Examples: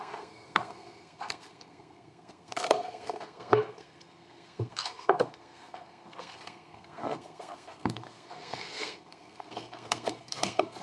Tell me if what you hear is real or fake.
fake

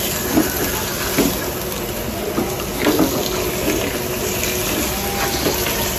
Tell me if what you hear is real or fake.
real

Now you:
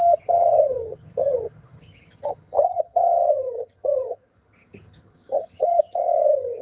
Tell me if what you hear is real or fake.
fake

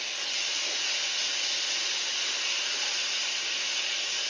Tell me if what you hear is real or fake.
real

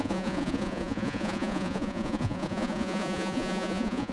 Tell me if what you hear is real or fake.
fake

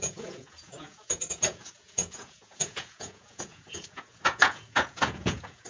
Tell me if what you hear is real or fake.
fake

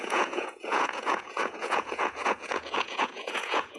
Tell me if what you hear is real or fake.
fake